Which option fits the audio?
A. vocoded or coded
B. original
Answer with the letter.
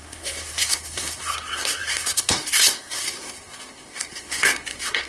A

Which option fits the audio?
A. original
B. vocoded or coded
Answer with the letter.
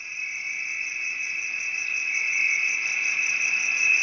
A